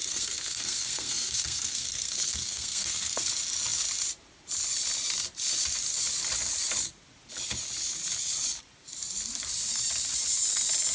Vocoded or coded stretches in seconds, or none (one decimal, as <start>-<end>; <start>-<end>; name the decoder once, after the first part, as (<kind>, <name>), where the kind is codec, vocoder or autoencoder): 0.0-3.3 (codec, SNAC)